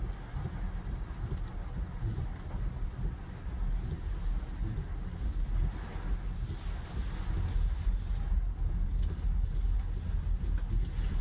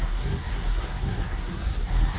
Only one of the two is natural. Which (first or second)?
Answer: first